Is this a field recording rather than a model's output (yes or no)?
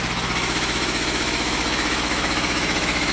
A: no